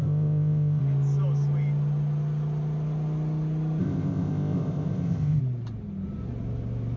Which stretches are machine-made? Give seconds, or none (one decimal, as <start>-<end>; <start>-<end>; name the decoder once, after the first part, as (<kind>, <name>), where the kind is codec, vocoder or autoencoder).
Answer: 0.0-0.8 (codec, ZipCodec); 3.8-5.4